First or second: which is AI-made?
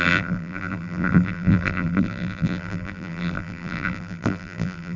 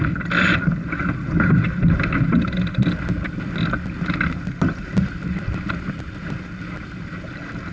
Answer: first